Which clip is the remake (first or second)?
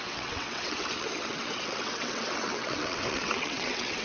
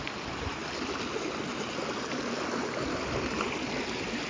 first